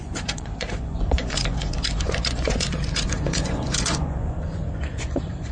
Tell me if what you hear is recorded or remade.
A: remade